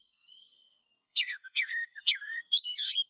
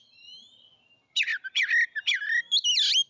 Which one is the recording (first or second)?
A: second